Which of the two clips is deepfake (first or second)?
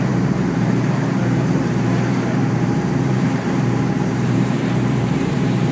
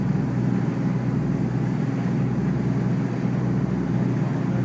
first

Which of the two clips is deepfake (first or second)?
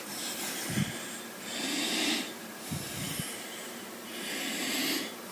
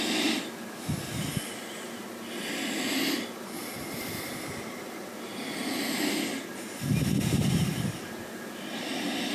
first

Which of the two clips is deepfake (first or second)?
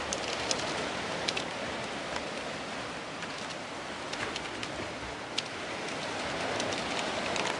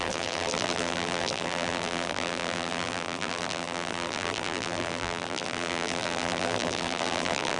second